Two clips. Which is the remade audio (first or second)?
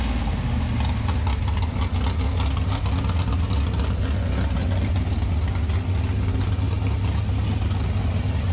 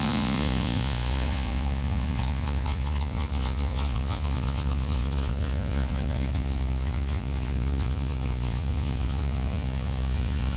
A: second